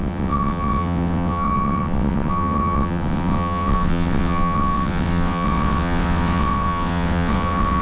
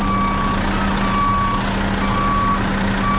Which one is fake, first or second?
first